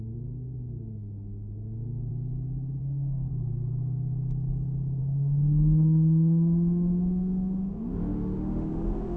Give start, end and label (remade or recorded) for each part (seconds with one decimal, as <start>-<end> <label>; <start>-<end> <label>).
0.0-2.1 remade; 2.1-2.8 recorded; 2.8-3.3 remade; 3.3-5.0 recorded; 5.0-9.2 remade